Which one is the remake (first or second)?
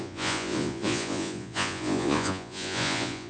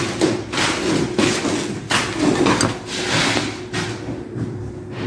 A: first